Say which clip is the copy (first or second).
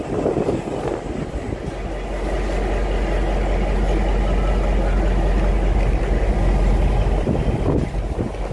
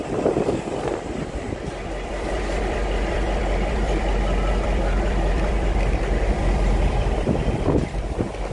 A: second